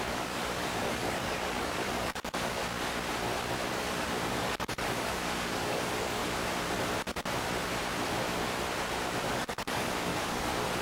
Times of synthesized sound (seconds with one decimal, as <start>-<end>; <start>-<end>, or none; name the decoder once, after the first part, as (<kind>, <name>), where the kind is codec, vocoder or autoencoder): 0.0-2.6 (codec, DAC); 3.7-6.2; 9.3-10.8

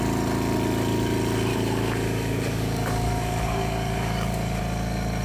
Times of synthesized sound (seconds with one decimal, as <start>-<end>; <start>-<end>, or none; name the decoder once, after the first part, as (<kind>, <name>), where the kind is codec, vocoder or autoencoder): 1.5-4.6 (codec, DAC)

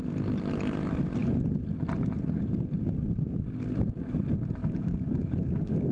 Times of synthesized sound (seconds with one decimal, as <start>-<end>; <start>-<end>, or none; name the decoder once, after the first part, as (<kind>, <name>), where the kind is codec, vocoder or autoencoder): 4.6-5.9 (codec, DAC)

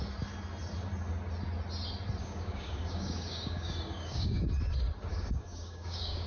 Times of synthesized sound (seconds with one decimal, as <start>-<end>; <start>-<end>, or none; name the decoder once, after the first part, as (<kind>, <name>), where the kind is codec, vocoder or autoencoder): 2.2-4.5 (codec, DAC); 5.1-6.3

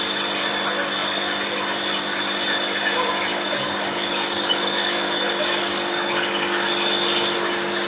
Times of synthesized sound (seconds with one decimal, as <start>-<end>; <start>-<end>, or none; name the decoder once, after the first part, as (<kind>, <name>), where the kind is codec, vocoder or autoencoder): 3.3-6.7 (codec, DAC)

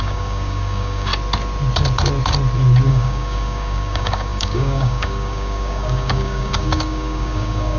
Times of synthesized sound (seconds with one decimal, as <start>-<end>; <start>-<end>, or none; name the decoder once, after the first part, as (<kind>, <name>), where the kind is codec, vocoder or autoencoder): 0.0-1.1 (codec, DAC); 2.9-7.8